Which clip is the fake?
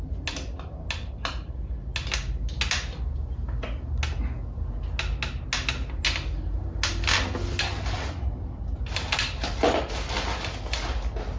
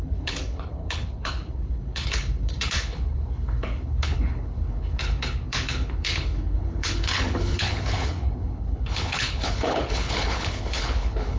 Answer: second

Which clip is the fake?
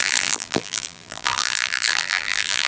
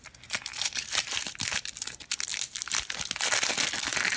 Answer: first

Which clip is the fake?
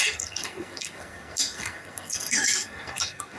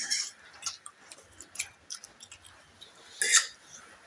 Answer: first